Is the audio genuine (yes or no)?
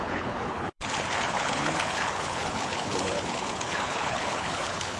no